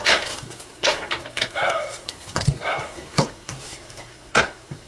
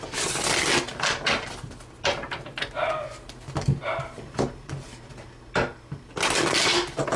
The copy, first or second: first